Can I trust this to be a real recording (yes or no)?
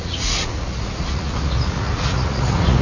no